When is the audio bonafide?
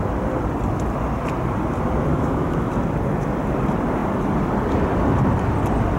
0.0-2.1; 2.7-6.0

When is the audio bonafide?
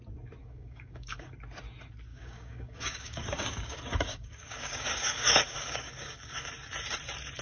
0.0-0.4; 1.3-2.1; 6.5-7.4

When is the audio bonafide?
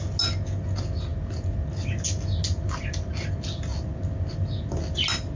0.0-5.4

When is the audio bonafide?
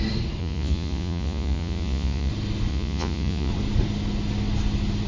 0.0-0.4; 2.3-2.7; 3.5-5.1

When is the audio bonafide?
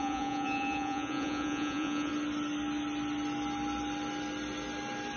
2.1-5.2